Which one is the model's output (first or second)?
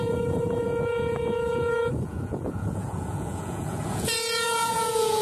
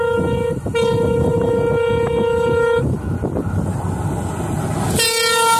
first